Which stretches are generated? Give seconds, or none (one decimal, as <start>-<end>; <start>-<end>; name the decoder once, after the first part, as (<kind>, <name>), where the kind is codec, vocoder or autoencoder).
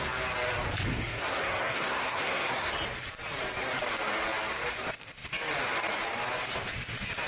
0.9-2.7 (codec, SNAC)